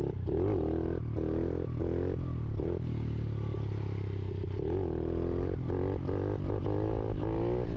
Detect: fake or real real